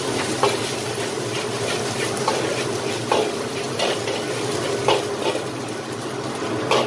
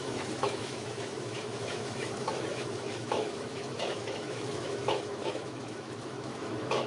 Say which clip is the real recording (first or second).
first